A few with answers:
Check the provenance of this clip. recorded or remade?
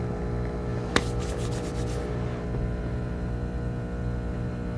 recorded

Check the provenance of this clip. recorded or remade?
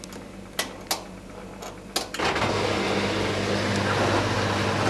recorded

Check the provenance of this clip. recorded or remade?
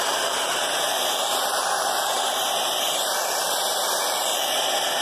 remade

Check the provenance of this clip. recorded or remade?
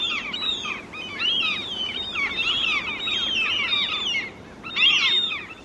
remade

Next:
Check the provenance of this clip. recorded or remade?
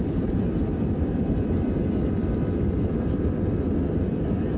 remade